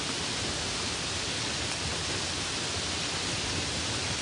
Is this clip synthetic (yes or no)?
no